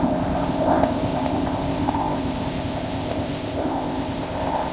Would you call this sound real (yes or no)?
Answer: no